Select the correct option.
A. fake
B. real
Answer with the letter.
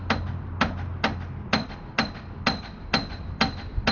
B